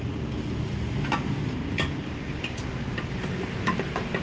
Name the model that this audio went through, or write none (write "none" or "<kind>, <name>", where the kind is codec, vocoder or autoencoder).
none